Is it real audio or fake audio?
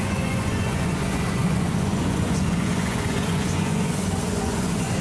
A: fake